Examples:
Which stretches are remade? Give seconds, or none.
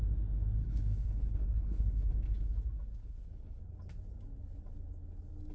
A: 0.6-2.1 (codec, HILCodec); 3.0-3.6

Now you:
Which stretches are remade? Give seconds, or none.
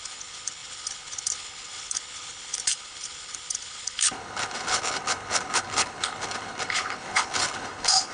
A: 0.0-8.1 (codec, HILCodec)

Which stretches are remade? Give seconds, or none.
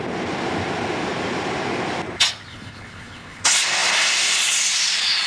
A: 2.5-3.4 (codec, HILCodec)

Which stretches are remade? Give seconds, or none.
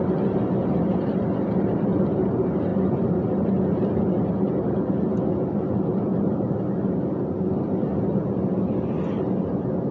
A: none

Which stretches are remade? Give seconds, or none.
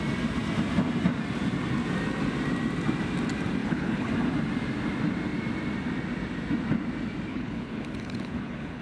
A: 3.6-4.1 (codec, HILCodec); 7.3-8.8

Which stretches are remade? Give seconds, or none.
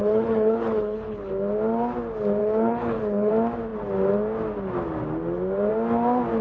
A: 0.0-1.3 (codec, HILCodec); 2.4-3.3